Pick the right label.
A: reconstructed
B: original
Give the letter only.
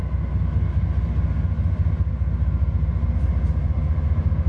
B